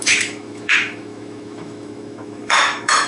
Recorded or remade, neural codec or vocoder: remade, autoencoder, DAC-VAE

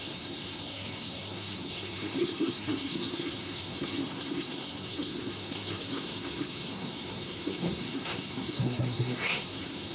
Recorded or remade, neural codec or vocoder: remade, codec, SNAC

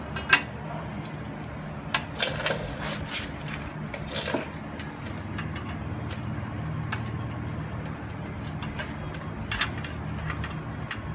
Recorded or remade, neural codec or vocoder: recorded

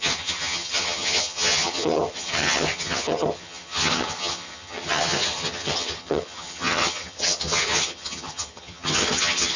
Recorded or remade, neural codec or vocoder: remade, vocoder, HiFi-GAN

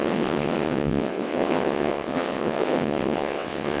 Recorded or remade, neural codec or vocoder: remade, vocoder, WaveNeXt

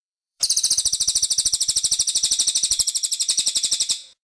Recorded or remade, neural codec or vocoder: remade, vocoder, Vocos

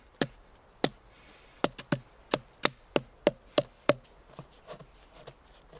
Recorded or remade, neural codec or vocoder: recorded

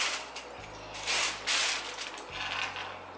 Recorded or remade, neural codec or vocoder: recorded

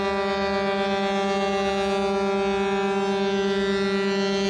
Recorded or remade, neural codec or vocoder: recorded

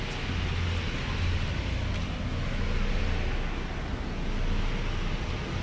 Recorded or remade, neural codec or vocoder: recorded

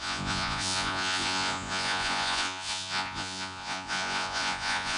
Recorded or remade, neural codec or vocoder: remade, vocoder, Vocos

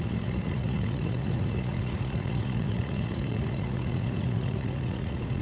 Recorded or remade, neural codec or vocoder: remade, vocoder, Vocos